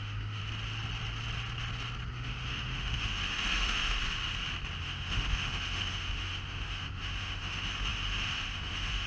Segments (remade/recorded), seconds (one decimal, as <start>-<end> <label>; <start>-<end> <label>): 0.0-0.4 remade; 0.4-2.1 recorded; 2.1-4.0 remade; 4.0-4.8 recorded; 4.8-9.1 remade